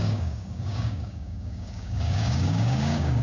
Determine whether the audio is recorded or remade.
remade